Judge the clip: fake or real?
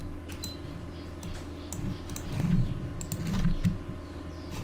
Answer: real